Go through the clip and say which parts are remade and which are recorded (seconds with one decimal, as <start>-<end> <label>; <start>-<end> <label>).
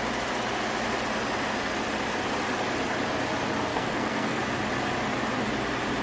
0.0-3.7 recorded; 3.7-4.4 remade; 4.4-6.0 recorded